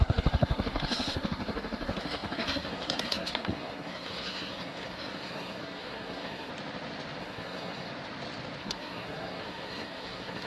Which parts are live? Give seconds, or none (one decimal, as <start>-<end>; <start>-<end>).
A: 6.5-7.2; 7.9-8.6